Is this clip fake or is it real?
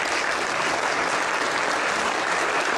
real